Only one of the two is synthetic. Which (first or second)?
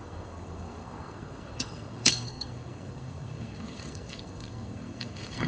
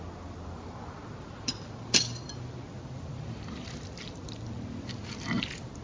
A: first